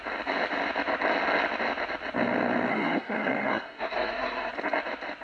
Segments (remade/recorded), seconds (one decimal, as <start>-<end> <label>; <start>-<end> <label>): 0.0-2.7 recorded; 2.7-4.5 remade; 4.5-5.2 recorded